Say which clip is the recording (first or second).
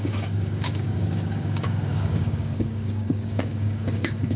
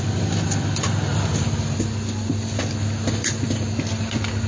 second